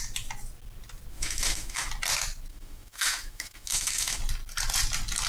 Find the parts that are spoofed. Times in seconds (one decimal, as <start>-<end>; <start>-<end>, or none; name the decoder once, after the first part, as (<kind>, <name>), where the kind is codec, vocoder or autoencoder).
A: 1.1-1.9 (autoencoder, DAC-VAE); 2.5-4.2